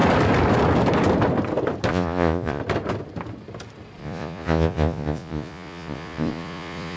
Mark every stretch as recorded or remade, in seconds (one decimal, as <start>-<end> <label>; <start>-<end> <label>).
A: 0.0-1.9 recorded; 1.9-2.6 remade; 2.6-4.0 recorded; 4.0-7.0 remade